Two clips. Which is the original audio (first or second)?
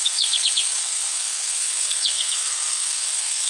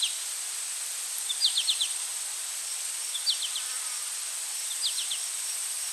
second